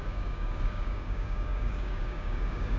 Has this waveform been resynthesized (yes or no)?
yes